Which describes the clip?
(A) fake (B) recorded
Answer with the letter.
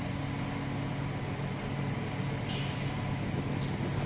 B